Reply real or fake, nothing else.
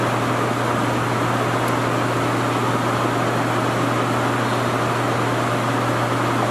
real